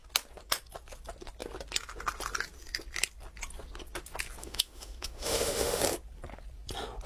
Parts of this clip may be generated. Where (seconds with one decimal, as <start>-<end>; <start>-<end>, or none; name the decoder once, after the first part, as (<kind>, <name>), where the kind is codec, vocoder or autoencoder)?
4.4-5.8 (autoencoder, DAC-VAE)